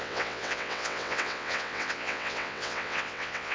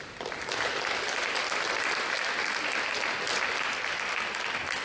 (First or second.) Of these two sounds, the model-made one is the first